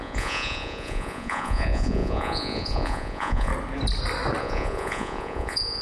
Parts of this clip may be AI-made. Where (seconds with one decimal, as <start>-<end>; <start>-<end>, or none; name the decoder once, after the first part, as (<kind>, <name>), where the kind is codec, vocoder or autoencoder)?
0.0-3.5 (vocoder, Vocos); 4.4-5.8

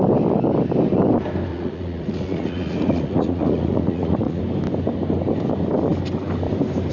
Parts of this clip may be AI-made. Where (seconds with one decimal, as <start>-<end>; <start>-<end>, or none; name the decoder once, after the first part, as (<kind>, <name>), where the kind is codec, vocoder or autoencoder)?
1.5-4.4 (vocoder, Vocos)

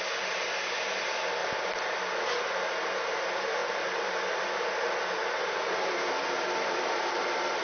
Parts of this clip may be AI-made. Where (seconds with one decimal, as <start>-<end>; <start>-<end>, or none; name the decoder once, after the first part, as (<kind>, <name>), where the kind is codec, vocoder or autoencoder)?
none

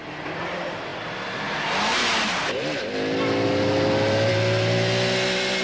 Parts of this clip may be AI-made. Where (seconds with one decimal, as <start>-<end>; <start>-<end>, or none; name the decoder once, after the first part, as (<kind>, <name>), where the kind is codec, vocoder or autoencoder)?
none

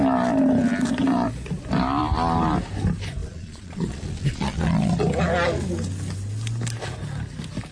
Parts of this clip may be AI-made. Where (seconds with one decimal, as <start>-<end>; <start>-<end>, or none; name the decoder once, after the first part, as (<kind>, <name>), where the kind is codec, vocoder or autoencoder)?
3.2-4.9 (vocoder, Vocos)

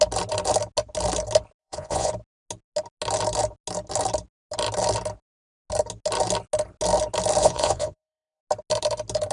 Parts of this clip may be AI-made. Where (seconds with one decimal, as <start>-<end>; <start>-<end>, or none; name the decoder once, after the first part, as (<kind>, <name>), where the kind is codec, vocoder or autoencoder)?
1.6-2.1 (vocoder, Vocos); 7.4-8.4

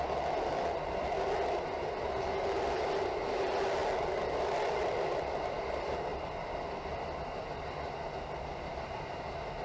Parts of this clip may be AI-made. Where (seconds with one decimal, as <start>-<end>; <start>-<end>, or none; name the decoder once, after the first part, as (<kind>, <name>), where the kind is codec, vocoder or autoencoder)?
none